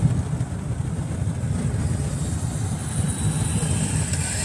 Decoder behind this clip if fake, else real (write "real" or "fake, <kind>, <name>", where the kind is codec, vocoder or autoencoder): real